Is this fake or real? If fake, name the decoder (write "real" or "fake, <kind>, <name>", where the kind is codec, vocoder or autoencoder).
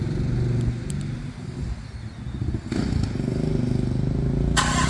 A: real